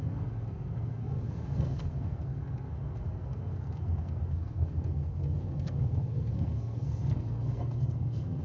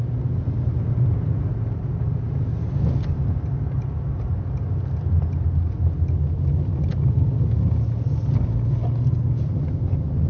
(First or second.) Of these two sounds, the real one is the second